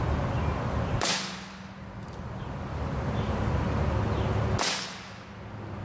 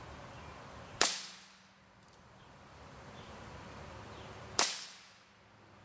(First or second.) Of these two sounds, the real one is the first